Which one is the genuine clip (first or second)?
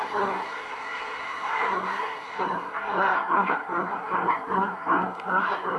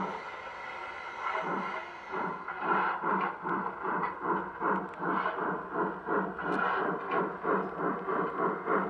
second